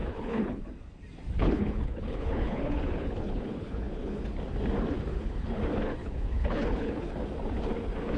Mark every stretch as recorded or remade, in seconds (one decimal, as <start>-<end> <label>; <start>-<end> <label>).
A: 0.0-0.6 remade; 0.6-1.4 recorded; 1.4-4.2 remade; 4.2-5.1 recorded; 5.1-5.6 remade; 5.6-6.0 recorded; 6.0-7.1 remade; 7.1-8.2 recorded